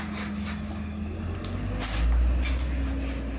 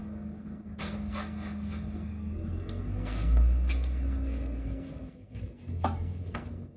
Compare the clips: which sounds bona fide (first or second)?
first